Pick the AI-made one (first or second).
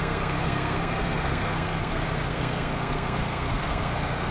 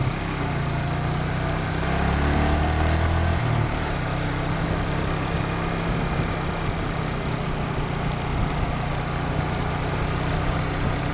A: first